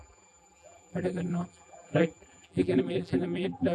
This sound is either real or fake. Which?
fake